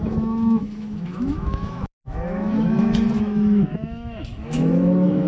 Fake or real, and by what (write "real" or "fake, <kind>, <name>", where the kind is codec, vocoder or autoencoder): fake, autoencoder, DAC-VAE